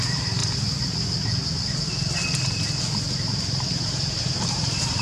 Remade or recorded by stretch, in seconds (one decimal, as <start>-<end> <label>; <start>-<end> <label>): 0.0-0.4 remade; 0.4-3.4 recorded; 3.4-5.0 remade